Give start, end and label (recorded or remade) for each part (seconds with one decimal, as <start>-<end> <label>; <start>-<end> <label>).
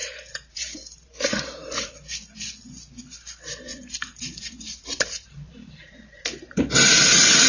0.0-1.9 remade; 1.9-3.7 recorded; 3.7-6.6 remade; 6.6-7.5 recorded